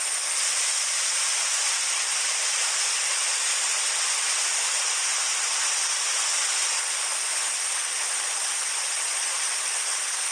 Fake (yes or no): no